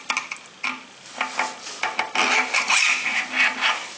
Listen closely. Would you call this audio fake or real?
real